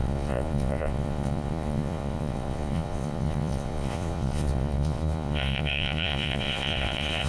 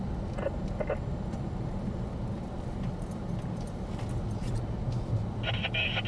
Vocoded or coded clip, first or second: first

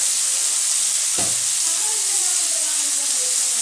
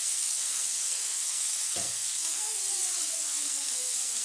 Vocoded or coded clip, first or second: second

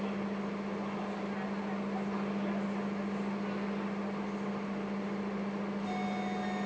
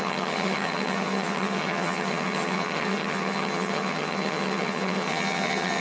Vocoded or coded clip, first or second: second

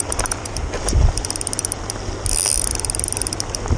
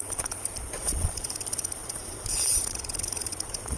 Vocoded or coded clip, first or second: second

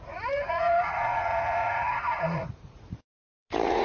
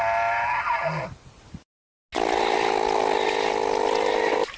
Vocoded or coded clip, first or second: first